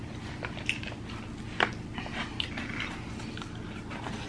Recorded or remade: recorded